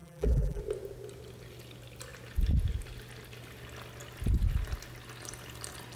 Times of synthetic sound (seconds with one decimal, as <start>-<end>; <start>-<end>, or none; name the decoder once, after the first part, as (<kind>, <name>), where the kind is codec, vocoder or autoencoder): 0.0-0.6 (vocoder, BigVGAN v2)